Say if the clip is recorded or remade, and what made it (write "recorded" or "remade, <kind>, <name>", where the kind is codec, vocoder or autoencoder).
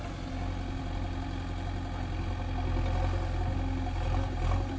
recorded